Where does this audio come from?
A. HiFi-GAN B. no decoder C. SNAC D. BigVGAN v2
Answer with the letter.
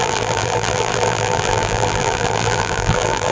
D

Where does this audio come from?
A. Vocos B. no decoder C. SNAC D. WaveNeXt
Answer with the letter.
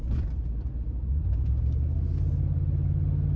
B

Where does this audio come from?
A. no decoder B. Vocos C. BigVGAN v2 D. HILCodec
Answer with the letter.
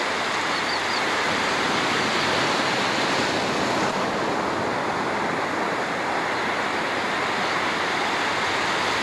A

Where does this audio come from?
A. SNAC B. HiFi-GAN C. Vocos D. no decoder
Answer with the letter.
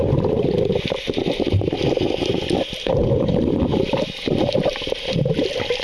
D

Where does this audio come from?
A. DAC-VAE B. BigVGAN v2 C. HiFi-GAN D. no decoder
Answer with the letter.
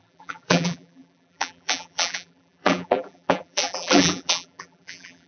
B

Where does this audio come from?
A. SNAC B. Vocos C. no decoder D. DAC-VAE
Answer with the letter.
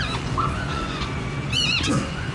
B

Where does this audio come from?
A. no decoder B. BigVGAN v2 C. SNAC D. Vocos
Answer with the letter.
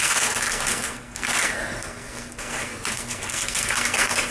C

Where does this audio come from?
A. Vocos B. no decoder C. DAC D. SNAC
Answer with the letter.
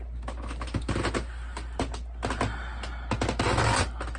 B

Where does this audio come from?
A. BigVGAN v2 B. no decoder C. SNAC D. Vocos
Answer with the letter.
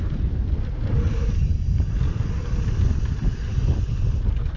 B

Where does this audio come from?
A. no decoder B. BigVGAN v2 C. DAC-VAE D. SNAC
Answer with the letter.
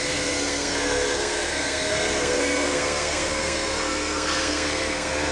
D